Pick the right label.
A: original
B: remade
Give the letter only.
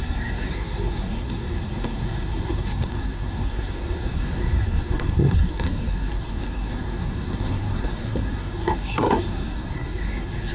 B